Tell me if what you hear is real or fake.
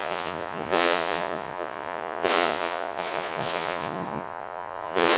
fake